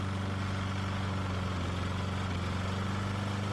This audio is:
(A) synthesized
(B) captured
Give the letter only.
B